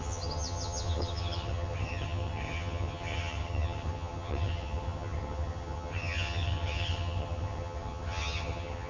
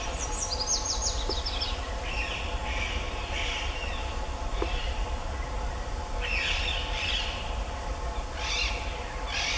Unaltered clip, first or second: second